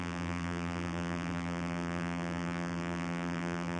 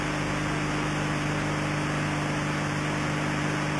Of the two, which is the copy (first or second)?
first